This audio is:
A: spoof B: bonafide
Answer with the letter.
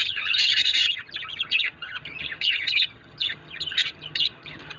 A